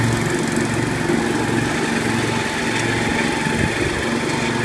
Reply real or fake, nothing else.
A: real